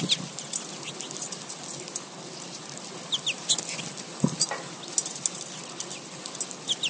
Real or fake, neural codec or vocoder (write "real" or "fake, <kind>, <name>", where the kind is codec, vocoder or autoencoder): real